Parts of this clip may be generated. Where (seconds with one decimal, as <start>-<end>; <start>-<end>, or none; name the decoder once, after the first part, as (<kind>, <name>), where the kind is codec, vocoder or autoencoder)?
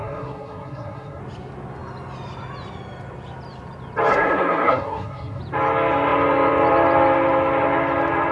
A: 0.0-1.2 (codec, SNAC); 4.1-5.4